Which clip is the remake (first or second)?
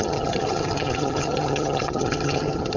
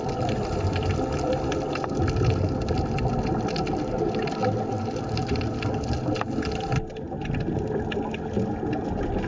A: first